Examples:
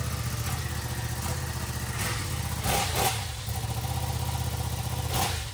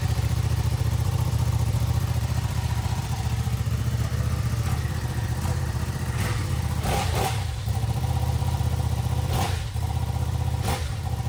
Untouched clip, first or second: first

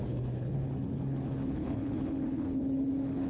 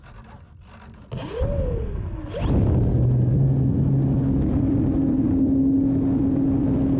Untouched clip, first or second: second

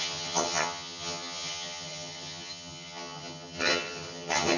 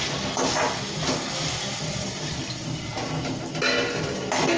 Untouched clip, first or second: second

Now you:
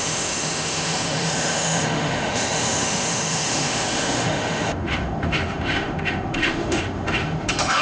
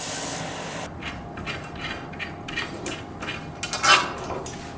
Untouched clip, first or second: second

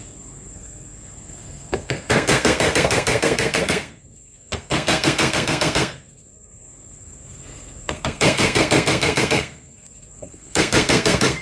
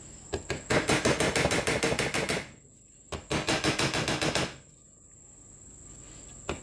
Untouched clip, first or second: second